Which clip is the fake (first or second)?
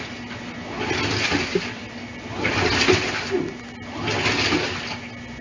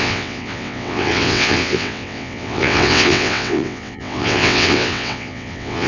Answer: second